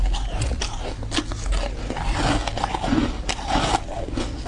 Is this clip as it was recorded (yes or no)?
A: yes